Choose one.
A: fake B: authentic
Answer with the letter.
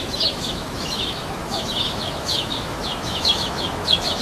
A